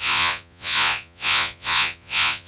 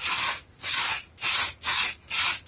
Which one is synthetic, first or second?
first